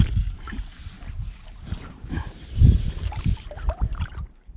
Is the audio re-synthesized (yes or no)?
yes